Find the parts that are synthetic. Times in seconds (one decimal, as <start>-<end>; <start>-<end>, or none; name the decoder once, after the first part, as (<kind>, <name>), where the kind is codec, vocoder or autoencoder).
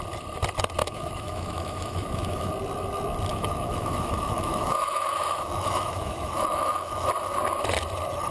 0.8-2.5 (autoencoder, DAC-VAE); 3.3-7.1